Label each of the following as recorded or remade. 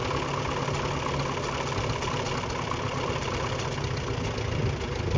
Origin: recorded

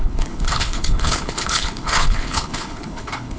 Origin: remade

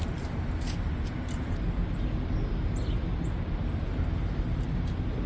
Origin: recorded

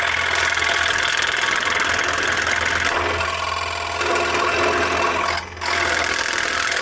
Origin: recorded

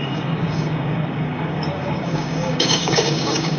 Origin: remade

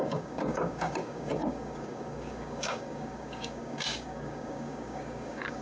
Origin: remade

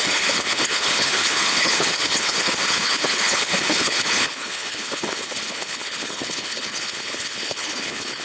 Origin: remade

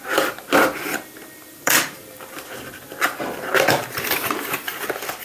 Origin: remade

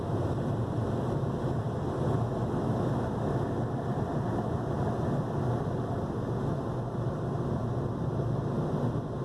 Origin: recorded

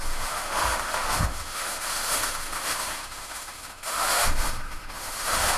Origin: remade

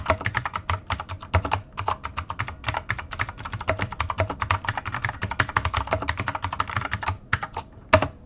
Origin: recorded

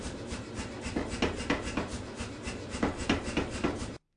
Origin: recorded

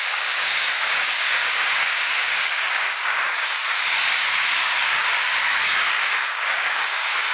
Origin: remade